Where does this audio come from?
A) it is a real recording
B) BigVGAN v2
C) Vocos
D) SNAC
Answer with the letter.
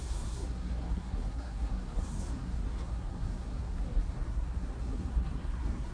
D